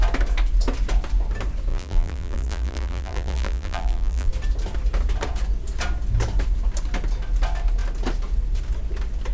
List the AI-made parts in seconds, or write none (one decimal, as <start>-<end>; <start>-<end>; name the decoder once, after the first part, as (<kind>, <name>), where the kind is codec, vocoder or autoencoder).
1.7-4.3 (vocoder, BigVGAN v2)